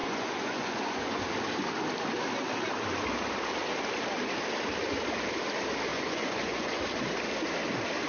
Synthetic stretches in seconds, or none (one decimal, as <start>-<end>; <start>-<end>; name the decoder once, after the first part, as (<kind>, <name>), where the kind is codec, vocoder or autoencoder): 0.0-1.2 (vocoder, Vocos); 5.9-6.8

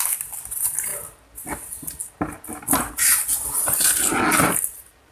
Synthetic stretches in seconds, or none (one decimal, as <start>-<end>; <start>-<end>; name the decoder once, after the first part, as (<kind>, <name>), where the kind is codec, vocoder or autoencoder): none

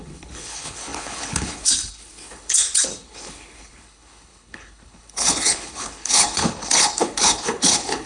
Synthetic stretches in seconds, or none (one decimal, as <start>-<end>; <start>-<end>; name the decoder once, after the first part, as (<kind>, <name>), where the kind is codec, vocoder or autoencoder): 0.0-8.1 (codec, HILCodec)

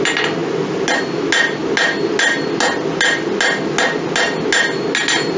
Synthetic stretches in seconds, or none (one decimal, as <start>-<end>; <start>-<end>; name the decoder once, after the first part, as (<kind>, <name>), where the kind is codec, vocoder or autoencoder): none

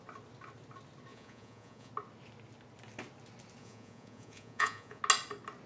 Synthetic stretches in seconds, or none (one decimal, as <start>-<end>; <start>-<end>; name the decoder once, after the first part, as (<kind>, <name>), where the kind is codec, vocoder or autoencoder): 1.1-1.9 (vocoder, Vocos); 3.6-5.0